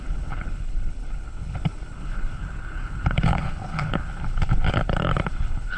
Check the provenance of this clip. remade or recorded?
remade